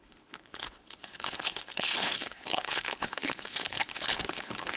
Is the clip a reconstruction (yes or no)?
yes